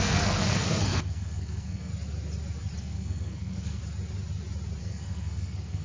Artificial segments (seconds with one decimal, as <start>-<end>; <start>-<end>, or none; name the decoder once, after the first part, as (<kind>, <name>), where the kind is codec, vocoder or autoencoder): 0.0-1.9 (codec, SNAC); 2.8-3.8; 4.8-5.8

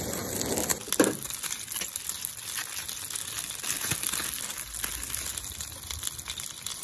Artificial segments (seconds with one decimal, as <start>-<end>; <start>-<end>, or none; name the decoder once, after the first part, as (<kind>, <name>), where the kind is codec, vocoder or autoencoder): none

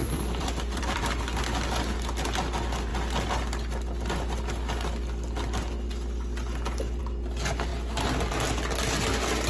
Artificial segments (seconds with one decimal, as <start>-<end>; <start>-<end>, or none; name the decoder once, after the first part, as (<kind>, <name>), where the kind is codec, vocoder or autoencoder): 0.0-1.0 (vocoder, BigVGAN v2)

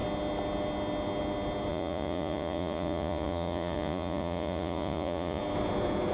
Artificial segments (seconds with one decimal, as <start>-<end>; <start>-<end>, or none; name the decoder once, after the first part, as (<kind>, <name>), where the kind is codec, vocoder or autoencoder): 1.7-5.4 (vocoder, Vocos)

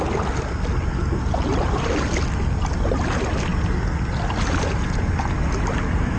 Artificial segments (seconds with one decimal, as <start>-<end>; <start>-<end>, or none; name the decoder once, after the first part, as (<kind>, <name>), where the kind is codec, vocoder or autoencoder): none